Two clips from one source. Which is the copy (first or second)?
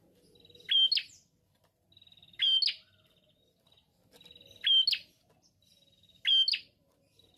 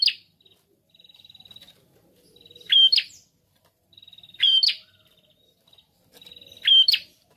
second